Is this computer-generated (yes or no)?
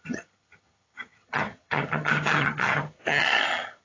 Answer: yes